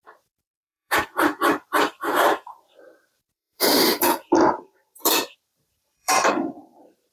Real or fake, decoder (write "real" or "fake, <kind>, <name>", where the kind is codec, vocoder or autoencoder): fake, vocoder, BigVGAN v2